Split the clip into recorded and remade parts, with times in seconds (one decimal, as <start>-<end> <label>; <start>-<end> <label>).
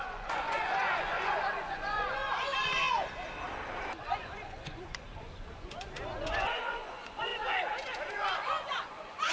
0.0-2.2 remade; 2.2-3.9 recorded; 3.9-7.3 remade; 7.3-8.1 recorded; 8.1-9.3 remade